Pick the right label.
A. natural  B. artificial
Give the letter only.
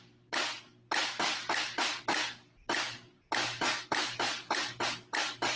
A